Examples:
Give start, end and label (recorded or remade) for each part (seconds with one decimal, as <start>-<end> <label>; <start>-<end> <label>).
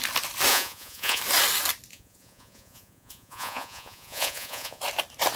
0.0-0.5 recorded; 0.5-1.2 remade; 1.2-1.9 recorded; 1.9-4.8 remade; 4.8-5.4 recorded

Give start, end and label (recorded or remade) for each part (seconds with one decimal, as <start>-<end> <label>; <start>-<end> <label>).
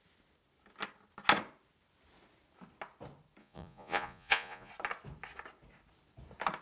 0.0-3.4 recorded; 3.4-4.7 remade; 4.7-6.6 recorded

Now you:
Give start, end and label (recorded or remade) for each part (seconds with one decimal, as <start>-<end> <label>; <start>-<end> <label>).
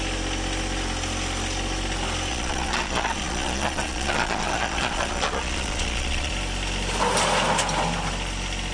0.0-2.3 recorded; 2.3-6.3 remade; 6.3-8.7 recorded